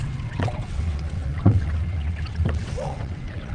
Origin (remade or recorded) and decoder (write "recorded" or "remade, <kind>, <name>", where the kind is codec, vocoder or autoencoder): remade, vocoder, WaveNeXt